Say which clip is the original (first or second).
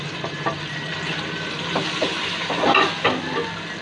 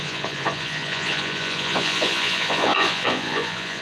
first